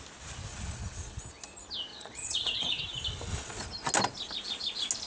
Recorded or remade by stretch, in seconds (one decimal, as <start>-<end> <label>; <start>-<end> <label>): 0.0-0.5 recorded; 0.5-1.2 remade; 1.2-1.9 recorded; 1.9-2.8 remade; 2.8-3.3 recorded; 3.3-3.9 remade; 3.9-5.1 recorded